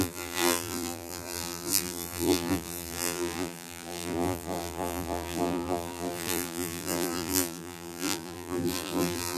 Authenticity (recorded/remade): remade